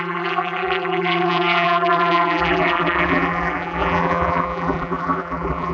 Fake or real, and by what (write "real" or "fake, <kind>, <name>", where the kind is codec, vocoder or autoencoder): fake, vocoder, BigVGAN v2